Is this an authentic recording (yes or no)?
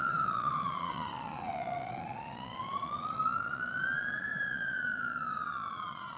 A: no